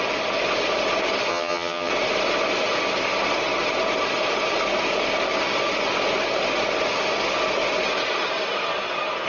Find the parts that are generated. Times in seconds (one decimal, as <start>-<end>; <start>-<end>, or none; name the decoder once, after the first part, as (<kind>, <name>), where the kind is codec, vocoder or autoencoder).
1.3-1.9 (vocoder, HiFi-GAN)